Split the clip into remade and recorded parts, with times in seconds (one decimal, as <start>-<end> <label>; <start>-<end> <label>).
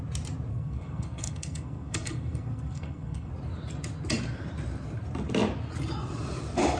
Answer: 0.0-0.5 recorded; 0.5-3.3 remade; 3.3-6.8 recorded